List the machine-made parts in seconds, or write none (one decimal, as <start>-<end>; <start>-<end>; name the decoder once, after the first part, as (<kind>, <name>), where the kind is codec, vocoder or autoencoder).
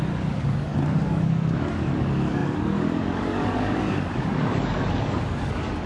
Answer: 0.0-5.9 (codec, DAC)